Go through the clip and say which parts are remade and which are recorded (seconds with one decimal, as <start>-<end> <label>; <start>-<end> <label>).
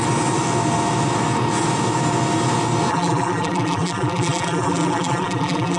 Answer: 0.0-2.9 recorded; 2.9-5.8 remade